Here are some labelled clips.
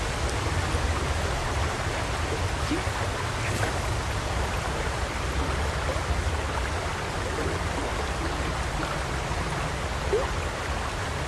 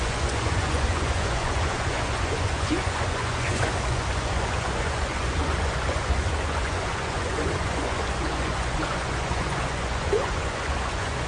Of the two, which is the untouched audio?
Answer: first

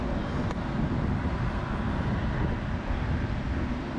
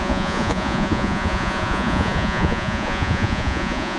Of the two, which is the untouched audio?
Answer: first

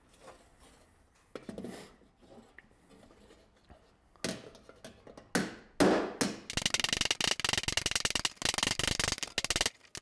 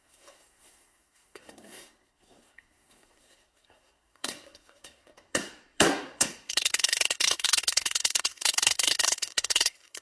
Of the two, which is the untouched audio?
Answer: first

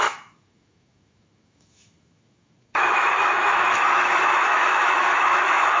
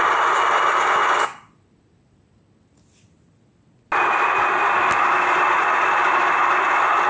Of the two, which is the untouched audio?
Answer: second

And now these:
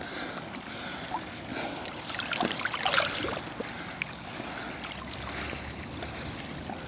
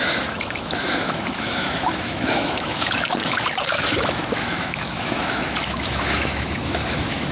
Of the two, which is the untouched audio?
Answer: first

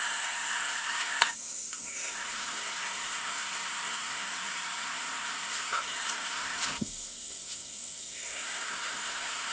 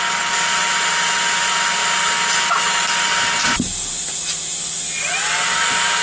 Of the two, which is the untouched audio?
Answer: second